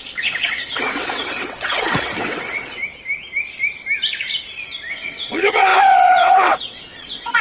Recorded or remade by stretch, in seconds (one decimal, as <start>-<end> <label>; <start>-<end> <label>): 0.0-2.8 remade; 2.8-4.9 recorded; 4.9-7.4 remade